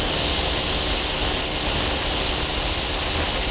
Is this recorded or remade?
recorded